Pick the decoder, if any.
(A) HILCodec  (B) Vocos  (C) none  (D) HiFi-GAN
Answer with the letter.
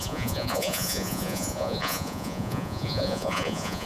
B